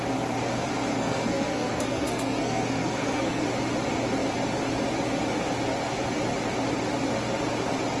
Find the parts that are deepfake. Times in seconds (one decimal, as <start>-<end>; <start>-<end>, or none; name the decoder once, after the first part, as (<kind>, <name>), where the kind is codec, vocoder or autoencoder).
0.9-3.4 (codec, SNAC)